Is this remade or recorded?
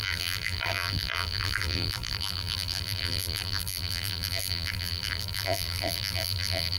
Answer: remade